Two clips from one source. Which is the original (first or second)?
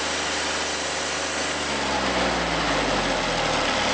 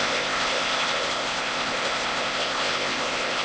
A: first